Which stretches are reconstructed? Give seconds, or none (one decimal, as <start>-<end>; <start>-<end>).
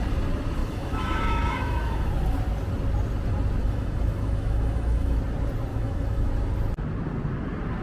0.6-2.1; 3.6-5.2; 5.7-6.3